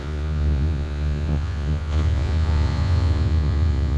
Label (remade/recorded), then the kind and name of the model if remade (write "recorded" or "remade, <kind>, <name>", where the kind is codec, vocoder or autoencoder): remade, vocoder, Vocos